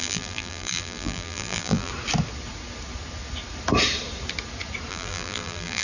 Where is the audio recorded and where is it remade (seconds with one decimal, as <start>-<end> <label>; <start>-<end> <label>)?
0.0-1.9 remade; 1.9-4.9 recorded; 4.9-5.8 remade